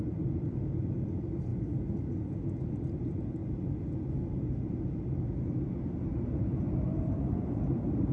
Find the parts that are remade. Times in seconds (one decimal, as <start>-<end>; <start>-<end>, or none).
none